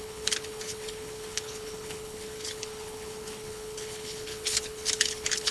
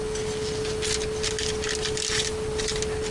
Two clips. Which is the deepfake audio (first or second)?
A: first